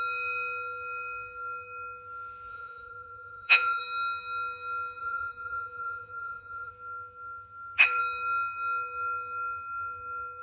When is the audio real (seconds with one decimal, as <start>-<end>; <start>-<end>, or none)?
0.0-2.5; 3.8-5.0; 6.7-10.4